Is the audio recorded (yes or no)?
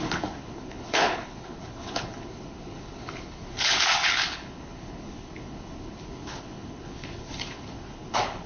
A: no